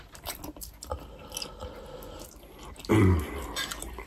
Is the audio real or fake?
real